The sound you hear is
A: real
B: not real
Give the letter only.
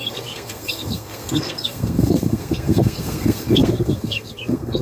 B